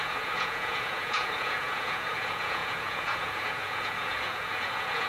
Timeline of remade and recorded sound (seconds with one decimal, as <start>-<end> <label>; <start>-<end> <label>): 0.0-5.1 remade